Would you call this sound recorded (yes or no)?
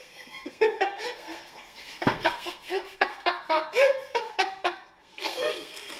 no